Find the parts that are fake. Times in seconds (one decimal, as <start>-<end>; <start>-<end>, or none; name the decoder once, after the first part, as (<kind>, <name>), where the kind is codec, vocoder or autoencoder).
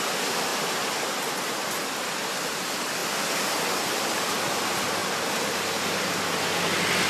0.5-1.3 (vocoder, BigVGAN v2); 5.0-5.6